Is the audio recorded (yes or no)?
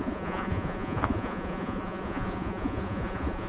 no